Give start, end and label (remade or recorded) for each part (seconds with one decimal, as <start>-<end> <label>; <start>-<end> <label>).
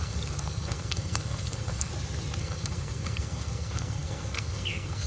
0.0-1.9 remade; 1.9-2.4 recorded; 2.4-5.1 remade